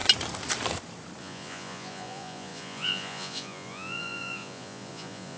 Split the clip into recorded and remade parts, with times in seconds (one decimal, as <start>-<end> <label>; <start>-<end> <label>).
0.0-1.2 recorded; 1.2-5.4 remade